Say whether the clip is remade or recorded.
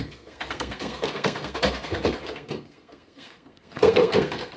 remade